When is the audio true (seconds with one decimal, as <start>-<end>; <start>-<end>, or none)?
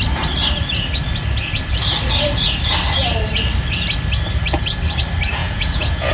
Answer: 0.0-5.4